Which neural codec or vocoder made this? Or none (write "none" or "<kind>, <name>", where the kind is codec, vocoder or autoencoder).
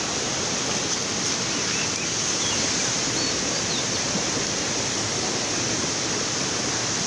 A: none